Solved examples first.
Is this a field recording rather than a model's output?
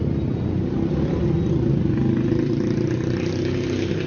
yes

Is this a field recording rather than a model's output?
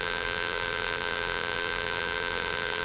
no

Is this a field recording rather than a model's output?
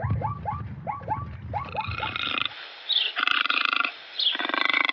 yes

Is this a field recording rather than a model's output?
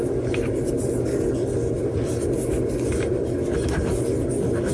yes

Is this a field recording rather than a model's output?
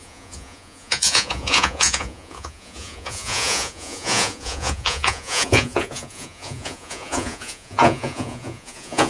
no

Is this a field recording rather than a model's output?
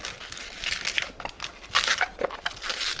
yes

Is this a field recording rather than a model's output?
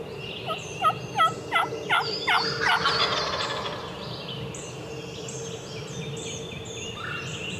yes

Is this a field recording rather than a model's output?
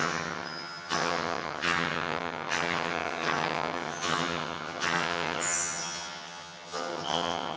no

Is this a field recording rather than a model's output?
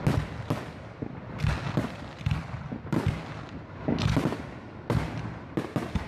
yes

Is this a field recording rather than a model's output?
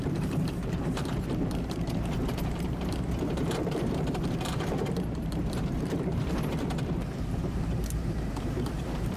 no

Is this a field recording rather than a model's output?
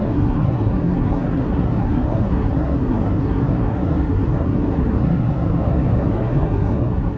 no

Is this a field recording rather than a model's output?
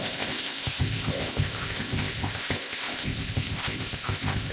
no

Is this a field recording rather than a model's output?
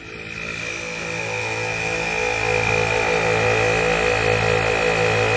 yes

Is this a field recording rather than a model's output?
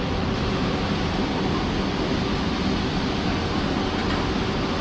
yes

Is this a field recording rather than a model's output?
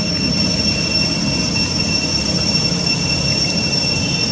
yes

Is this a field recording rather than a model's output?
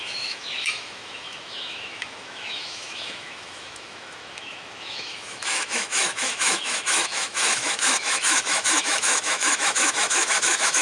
no